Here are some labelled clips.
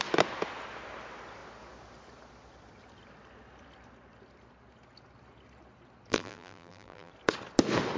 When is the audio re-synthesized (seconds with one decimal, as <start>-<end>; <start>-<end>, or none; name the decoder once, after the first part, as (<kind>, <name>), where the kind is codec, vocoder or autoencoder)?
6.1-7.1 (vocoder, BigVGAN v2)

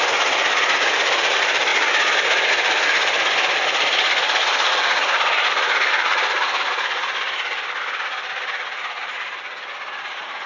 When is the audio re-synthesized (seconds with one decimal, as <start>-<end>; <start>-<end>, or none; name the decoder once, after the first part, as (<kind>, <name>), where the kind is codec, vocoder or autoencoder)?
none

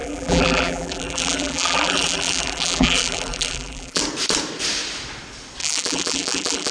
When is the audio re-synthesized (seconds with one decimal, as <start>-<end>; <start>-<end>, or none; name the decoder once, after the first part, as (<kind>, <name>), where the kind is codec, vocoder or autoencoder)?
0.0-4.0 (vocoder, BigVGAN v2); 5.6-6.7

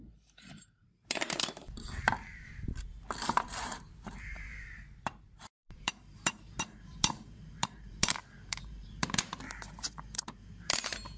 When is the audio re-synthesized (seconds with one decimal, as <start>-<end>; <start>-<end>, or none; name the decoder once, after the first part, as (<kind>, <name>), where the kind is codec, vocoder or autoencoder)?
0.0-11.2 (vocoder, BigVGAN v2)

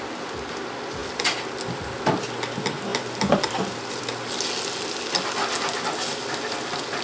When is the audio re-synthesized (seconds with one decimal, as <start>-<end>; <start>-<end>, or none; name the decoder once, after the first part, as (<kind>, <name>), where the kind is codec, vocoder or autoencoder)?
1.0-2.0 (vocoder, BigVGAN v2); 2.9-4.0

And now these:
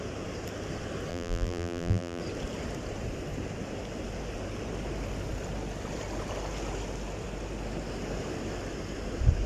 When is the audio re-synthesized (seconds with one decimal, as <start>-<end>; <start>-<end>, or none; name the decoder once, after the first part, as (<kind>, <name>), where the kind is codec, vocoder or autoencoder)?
1.1-2.2 (vocoder, BigVGAN v2)

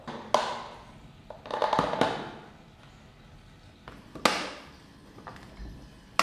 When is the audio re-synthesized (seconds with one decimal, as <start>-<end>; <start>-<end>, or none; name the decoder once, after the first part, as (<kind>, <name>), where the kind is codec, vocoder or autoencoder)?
none